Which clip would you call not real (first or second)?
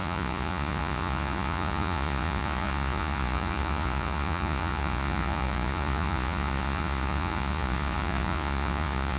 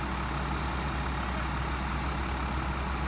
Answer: first